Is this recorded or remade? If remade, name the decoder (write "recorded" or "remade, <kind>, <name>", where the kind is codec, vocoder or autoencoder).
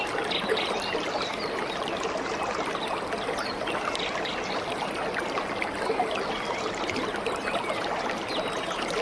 recorded